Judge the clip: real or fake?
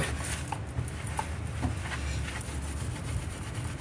real